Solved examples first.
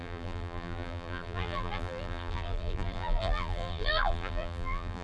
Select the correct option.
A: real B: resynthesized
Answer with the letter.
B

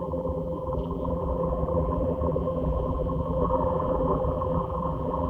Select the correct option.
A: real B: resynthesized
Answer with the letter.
B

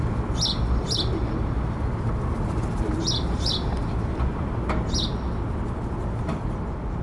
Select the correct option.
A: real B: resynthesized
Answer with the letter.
B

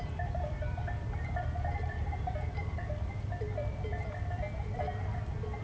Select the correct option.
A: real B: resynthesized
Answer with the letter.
B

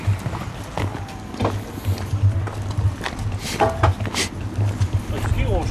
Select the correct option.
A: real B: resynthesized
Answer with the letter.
A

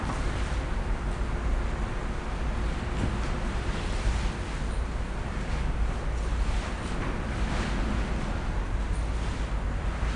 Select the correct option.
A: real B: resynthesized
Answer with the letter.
A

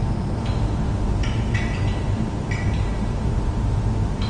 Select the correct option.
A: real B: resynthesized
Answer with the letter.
B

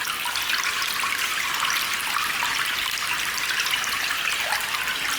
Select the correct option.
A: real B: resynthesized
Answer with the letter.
A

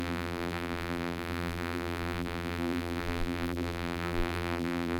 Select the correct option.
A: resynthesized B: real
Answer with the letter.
A